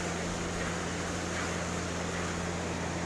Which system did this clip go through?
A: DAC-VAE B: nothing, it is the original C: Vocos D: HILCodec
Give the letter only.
B